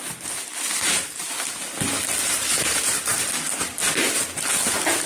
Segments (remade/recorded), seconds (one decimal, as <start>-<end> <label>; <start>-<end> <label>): 0.0-5.1 recorded